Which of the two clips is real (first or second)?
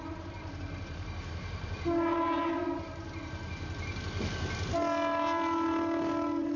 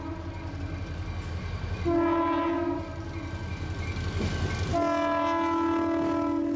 second